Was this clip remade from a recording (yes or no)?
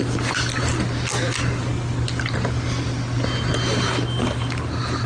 no